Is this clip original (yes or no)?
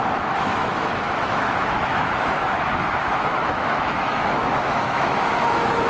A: no